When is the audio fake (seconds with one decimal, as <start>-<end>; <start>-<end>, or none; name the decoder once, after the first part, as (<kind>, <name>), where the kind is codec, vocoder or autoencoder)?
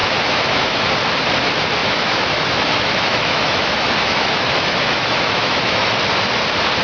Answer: 0.0-0.8 (autoencoder, DAC-VAE); 1.8-5.9